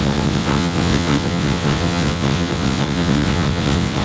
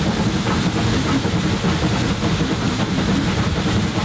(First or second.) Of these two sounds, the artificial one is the first